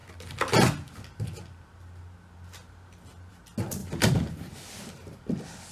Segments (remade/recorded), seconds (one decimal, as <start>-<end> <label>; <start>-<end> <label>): 0.0-5.7 recorded